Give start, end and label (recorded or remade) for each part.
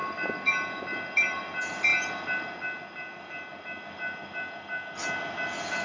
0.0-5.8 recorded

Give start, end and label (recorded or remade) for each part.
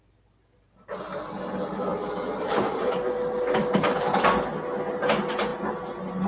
0.0-6.3 recorded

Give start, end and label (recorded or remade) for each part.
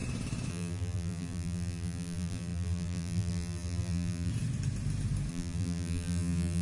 0.0-0.5 recorded; 0.5-4.3 remade; 4.3-5.3 recorded; 5.3-6.6 remade